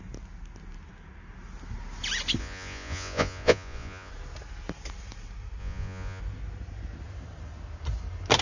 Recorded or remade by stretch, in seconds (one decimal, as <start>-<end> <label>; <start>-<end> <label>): 0.0-2.4 recorded; 2.4-4.1 remade; 4.1-5.6 recorded; 5.6-6.2 remade; 6.2-8.4 recorded